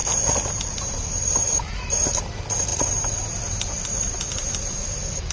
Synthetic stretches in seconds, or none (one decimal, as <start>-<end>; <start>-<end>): 0.7-5.3